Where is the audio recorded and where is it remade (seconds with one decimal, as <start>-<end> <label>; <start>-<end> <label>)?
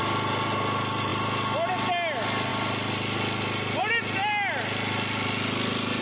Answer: 0.0-6.0 recorded